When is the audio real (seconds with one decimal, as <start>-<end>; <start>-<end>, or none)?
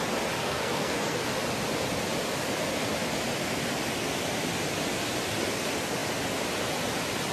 0.0-0.4; 1.3-7.3